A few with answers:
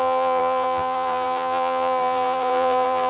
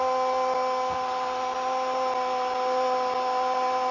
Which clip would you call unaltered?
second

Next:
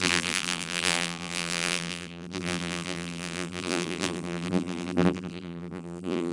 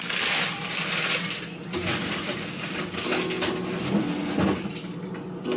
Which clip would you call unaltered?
second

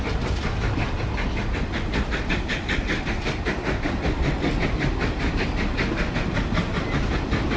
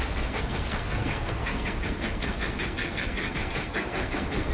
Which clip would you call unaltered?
first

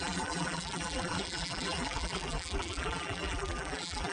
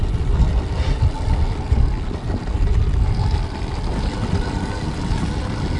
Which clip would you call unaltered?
second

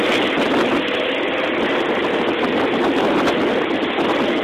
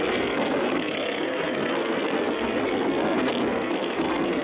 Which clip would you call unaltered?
first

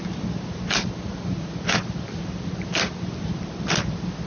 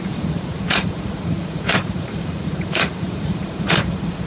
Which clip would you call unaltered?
first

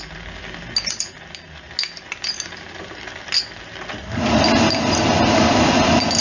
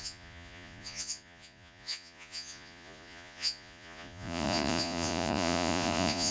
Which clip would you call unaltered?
first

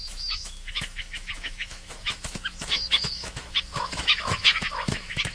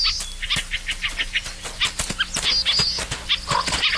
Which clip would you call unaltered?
second